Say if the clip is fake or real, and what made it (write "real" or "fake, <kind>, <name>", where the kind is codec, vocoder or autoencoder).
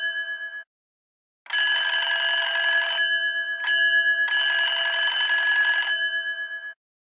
real